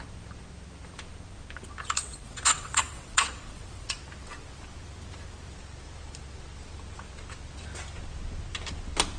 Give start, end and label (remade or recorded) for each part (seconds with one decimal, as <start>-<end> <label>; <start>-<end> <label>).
0.0-2.0 recorded; 2.0-4.0 remade; 4.0-9.2 recorded